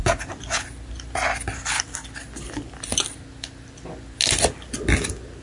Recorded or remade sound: recorded